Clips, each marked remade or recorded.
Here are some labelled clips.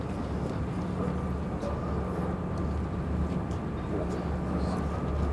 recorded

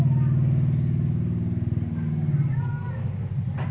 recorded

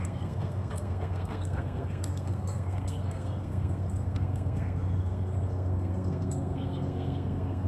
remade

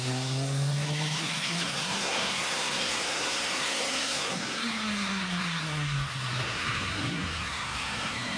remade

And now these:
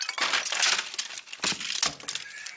recorded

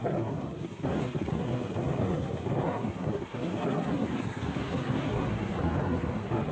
remade